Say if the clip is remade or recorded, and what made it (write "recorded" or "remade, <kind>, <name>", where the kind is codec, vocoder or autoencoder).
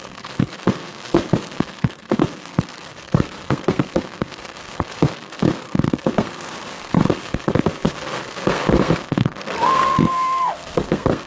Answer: remade, codec, SNAC